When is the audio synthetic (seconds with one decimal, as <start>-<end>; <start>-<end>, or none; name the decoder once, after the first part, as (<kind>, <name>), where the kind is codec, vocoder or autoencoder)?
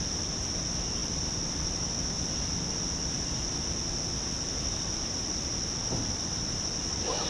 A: none